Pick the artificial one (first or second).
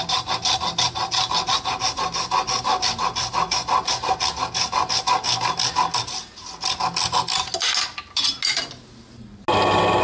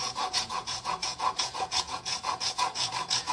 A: second